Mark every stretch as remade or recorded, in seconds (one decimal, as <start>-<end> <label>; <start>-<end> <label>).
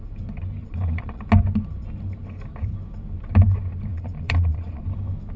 0.0-0.6 recorded; 0.6-1.2 remade; 1.2-3.9 recorded; 3.9-4.8 remade; 4.8-5.4 recorded